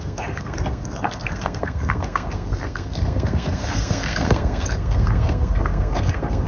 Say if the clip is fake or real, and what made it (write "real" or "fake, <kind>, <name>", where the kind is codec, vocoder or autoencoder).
fake, codec, SNAC